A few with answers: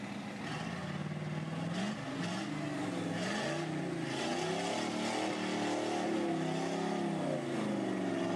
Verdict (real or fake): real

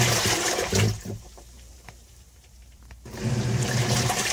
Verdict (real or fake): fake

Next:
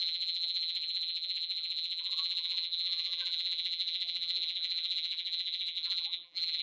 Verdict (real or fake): fake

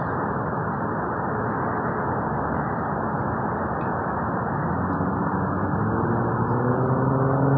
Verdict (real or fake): real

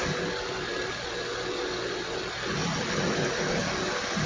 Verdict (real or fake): real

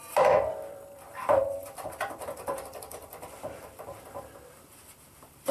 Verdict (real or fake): fake